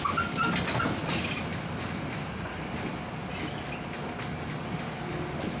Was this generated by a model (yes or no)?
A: no